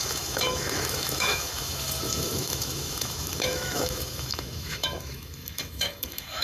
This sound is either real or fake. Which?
fake